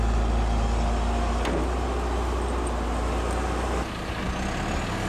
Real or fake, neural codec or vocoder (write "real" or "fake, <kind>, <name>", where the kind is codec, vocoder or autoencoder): real